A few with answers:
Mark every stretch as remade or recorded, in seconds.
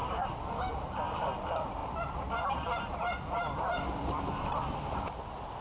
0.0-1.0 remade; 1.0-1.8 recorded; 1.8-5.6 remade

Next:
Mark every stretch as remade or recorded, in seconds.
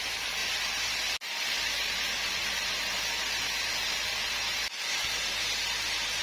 0.0-6.2 recorded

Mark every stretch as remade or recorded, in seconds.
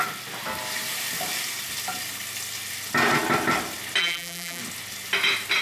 0.0-4.0 recorded; 4.0-4.6 remade; 4.6-5.6 recorded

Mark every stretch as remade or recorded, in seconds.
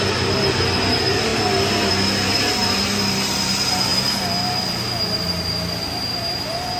0.0-6.8 recorded